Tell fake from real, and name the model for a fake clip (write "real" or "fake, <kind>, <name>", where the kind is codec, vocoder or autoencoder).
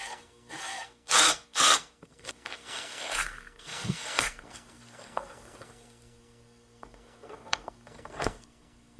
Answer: fake, codec, SNAC